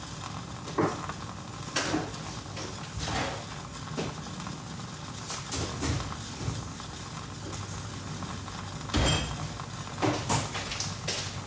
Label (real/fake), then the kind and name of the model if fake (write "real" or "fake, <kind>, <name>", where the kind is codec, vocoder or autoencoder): real